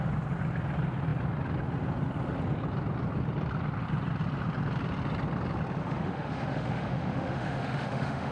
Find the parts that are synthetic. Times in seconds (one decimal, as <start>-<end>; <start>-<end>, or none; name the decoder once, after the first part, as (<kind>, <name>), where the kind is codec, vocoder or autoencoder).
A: 5.8-8.3 (autoencoder, DAC-VAE)